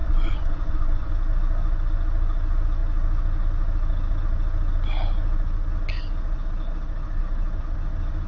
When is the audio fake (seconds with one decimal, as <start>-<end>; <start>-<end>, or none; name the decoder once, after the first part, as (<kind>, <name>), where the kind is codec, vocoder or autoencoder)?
0.0-1.1 (vocoder, Vocos)